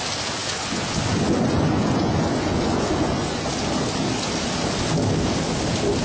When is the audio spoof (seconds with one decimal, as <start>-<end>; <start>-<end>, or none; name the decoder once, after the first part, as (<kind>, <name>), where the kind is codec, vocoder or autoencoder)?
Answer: 0.4-3.5 (vocoder, Vocos)